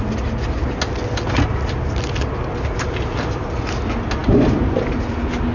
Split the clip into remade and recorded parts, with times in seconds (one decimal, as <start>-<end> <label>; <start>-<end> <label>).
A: 0.0-4.2 recorded; 4.2-5.0 remade; 5.0-5.5 recorded